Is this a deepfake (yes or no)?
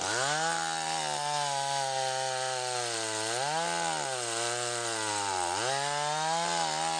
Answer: no